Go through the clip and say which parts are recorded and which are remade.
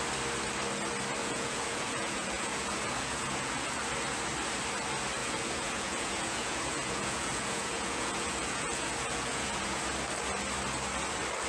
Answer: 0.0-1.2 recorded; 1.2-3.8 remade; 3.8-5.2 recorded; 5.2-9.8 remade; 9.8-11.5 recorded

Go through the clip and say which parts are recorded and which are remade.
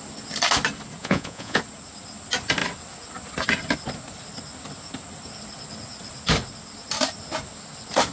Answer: 0.0-1.0 recorded; 1.0-1.6 remade; 1.6-8.1 recorded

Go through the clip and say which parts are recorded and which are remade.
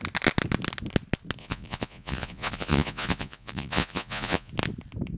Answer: 0.0-1.4 recorded; 1.4-4.5 remade; 4.5-5.2 recorded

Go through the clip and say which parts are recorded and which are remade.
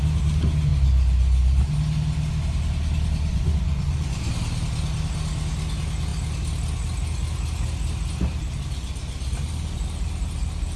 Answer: 0.0-3.3 recorded; 3.3-4.3 remade; 4.3-10.8 recorded